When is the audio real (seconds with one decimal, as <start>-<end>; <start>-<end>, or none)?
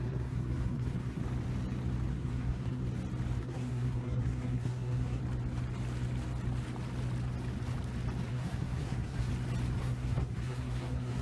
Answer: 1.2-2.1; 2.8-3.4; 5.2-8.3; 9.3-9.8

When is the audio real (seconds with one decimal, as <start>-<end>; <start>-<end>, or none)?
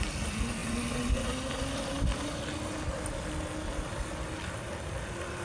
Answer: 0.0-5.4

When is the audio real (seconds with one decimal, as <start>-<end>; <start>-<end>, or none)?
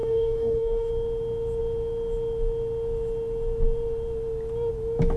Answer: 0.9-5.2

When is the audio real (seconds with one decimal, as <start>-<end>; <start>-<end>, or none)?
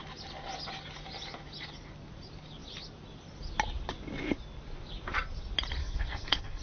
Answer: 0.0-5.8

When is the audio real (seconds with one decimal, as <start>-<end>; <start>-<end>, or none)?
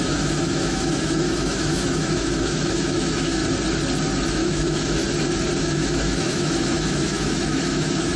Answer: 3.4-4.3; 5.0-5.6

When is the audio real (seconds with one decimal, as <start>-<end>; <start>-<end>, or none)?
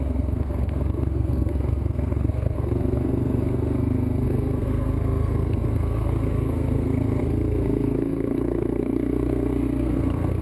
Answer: none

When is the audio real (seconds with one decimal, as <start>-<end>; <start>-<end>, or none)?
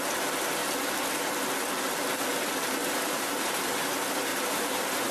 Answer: 0.0-2.8; 3.7-4.3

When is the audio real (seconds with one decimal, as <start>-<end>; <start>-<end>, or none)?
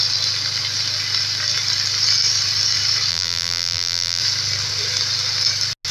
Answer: 0.0-3.1; 4.2-5.9